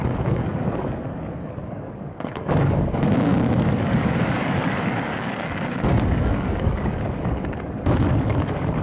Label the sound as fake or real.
fake